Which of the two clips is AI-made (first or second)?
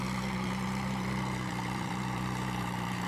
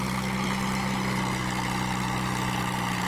first